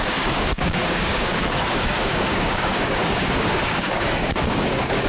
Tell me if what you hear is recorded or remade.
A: remade